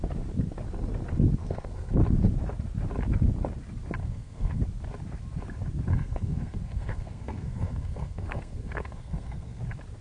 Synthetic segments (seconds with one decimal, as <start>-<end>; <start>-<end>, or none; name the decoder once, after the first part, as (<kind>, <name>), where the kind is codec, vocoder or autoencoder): 1.4-1.9 (codec, SNAC); 4.0-4.6; 5.9-9.6